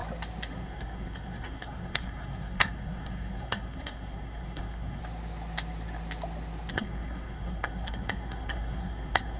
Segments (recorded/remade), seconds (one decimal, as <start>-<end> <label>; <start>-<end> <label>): 0.0-0.5 recorded; 0.5-5.0 remade; 5.0-6.7 recorded; 6.7-9.4 remade